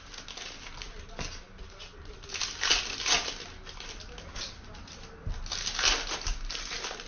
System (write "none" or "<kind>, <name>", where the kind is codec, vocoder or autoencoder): none